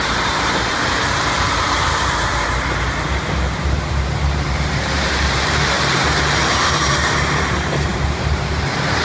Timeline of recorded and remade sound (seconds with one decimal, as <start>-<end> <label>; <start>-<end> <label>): 0.0-9.0 remade